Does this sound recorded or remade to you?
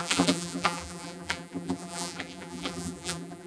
remade